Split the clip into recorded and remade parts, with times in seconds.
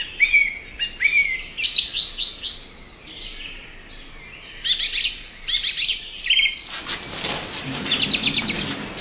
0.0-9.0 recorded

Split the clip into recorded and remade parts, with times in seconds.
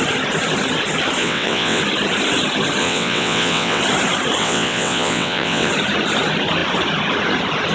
0.0-1.2 recorded; 1.2-1.8 remade; 1.8-2.8 recorded; 2.8-3.8 remade; 3.8-4.4 recorded; 4.4-5.7 remade; 5.7-7.7 recorded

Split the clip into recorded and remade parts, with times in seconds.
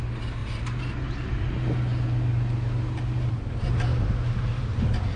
0.0-5.2 recorded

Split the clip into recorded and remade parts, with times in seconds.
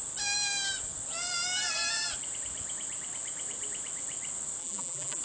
0.0-4.6 recorded; 4.6-5.2 remade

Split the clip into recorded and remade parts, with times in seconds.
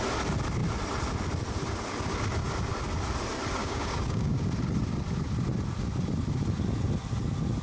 0.0-3.6 recorded; 3.6-4.4 remade; 4.4-7.6 recorded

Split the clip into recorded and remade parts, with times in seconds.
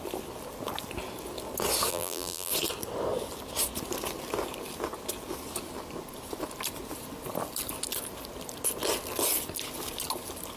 0.0-1.9 recorded; 1.9-2.5 remade; 2.5-10.6 recorded